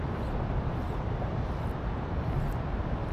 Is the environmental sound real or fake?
real